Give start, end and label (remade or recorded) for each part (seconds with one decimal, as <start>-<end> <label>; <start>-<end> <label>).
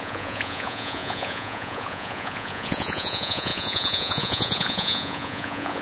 0.0-5.8 remade